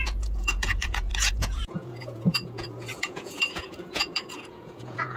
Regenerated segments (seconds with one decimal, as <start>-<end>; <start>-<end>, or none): 0.0-5.2